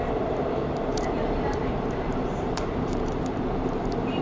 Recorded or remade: remade